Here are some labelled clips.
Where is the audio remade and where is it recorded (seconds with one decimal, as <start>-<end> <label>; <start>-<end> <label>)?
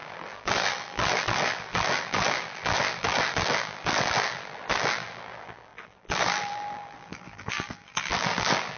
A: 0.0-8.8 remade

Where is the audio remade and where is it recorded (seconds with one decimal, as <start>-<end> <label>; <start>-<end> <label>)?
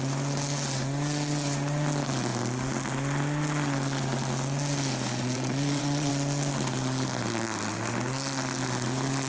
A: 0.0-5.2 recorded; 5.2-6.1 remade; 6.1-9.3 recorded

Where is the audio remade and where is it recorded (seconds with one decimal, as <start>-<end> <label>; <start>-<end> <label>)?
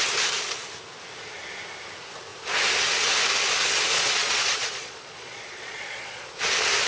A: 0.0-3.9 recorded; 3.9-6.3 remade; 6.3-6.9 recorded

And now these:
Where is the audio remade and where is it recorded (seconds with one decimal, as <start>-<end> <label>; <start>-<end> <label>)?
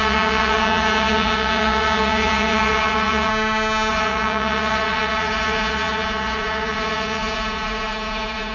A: 0.0-3.3 remade; 3.3-3.9 recorded; 3.9-8.5 remade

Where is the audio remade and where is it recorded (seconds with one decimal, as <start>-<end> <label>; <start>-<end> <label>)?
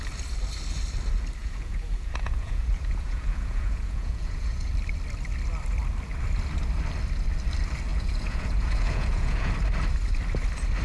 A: 0.0-1.4 recorded; 1.4-4.7 remade; 4.7-7.9 recorded; 7.9-9.5 remade; 9.5-10.8 recorded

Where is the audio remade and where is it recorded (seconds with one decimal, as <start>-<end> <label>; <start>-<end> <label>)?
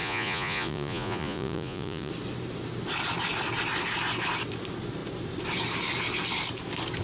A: 0.0-2.1 remade; 2.1-7.0 recorded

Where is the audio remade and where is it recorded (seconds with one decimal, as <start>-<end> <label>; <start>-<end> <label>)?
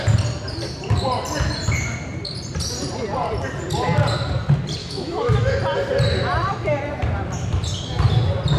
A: 0.0-4.8 recorded; 4.8-5.5 remade; 5.5-8.6 recorded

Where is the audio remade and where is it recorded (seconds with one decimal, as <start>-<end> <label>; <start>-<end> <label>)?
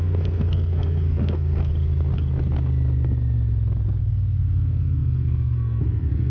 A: 0.0-1.7 remade; 1.7-4.0 recorded; 4.0-6.3 remade